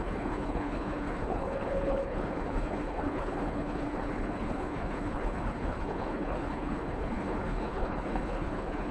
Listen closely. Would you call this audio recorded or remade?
remade